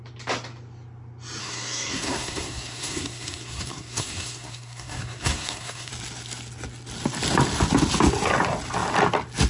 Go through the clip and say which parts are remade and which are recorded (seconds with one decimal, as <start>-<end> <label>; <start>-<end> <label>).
0.0-1.4 recorded; 1.4-5.9 remade; 5.9-9.5 recorded